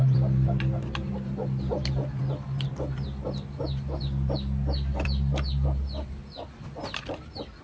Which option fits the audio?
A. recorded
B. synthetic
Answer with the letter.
A